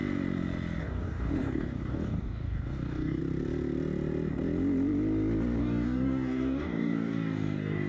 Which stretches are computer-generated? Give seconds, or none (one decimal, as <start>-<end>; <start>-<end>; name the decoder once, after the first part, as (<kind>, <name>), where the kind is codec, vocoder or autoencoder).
0.8-3.2 (codec, DAC); 5.6-7.9